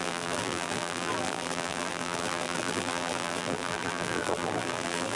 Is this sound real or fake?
fake